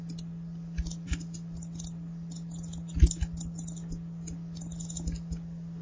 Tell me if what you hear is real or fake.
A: real